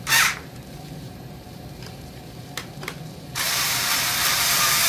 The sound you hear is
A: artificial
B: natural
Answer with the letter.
A